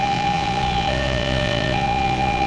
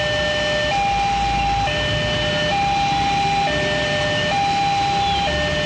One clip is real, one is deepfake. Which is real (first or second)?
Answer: second